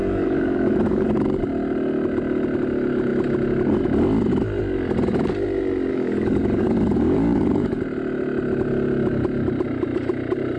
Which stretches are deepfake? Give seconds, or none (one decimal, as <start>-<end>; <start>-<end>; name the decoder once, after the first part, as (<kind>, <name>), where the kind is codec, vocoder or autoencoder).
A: 0.0-1.4 (codec, DAC); 5.9-7.8